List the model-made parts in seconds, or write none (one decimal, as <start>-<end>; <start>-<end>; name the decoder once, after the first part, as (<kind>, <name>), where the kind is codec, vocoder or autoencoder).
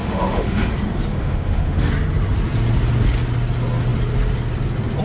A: 0.0-0.7 (autoencoder, DAC-VAE); 1.1-1.9